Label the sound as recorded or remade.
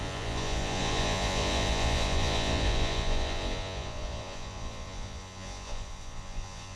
remade